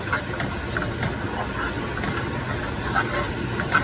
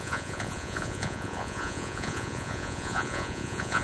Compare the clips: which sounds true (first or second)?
first